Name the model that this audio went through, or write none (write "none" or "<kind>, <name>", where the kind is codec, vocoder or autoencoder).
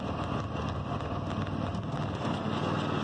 none